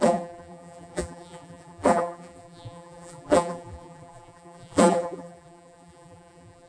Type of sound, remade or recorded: remade